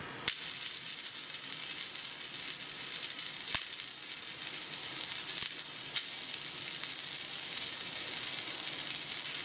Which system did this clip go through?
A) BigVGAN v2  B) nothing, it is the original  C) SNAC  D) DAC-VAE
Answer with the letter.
A